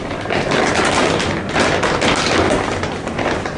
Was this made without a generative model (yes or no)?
yes